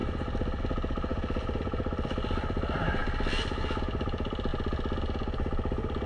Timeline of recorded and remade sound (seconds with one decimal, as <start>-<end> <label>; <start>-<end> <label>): 0.0-0.6 recorded; 0.6-1.1 remade; 1.1-1.6 recorded; 1.6-3.0 remade; 3.0-3.8 recorded; 3.8-4.5 remade; 4.5-6.1 recorded